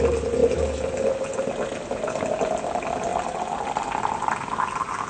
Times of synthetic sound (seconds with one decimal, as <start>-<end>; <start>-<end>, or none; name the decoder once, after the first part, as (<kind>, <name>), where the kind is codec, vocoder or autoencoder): none